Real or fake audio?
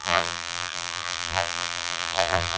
fake